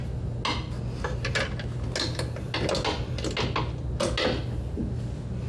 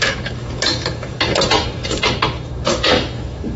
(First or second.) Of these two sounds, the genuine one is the first